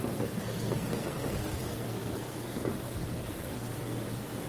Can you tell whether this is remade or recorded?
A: remade